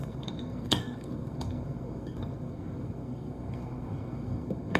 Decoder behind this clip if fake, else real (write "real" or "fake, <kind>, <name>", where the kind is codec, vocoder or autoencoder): fake, codec, SNAC